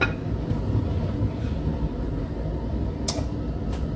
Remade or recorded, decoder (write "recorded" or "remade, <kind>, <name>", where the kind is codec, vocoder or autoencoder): recorded